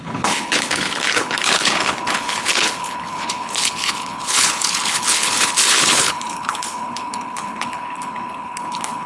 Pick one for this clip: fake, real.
fake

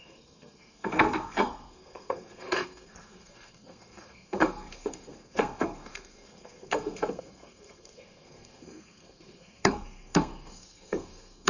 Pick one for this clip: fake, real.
fake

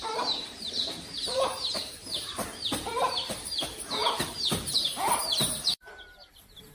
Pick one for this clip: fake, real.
fake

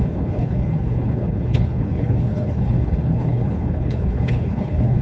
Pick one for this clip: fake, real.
fake